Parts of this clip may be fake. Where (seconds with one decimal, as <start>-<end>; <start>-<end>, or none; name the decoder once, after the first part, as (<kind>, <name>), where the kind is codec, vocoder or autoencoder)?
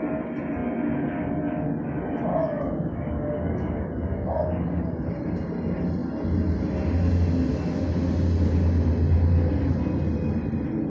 2.3-5.1 (codec, DAC)